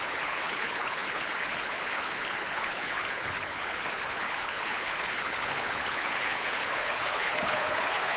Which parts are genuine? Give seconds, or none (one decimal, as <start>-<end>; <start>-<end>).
none